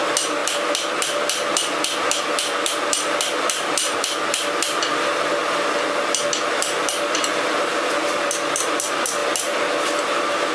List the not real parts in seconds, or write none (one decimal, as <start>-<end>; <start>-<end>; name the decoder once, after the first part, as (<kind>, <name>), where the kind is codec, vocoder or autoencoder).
none

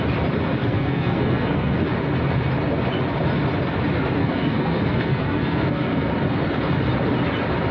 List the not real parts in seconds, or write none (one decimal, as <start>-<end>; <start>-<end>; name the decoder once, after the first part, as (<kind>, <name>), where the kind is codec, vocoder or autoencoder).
0.6-1.8 (codec, SNAC); 4.2-6.1